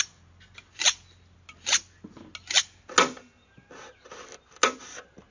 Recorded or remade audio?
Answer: recorded